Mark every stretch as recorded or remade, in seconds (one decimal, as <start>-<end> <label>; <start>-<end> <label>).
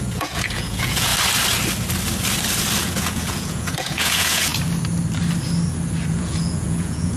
0.0-1.1 remade; 1.1-2.8 recorded; 2.8-4.5 remade; 4.5-6.1 recorded; 6.1-7.2 remade